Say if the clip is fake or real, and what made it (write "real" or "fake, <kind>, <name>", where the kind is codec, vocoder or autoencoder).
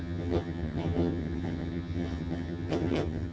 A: fake, vocoder, HiFi-GAN